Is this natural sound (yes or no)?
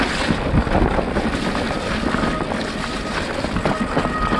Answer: yes